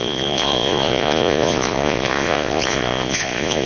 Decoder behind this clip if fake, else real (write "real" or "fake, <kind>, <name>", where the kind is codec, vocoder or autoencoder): fake, vocoder, Vocos